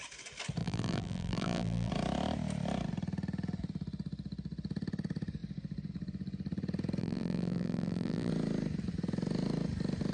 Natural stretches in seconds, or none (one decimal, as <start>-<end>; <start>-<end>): 0.0-0.6; 1.9-7.0; 8.3-10.1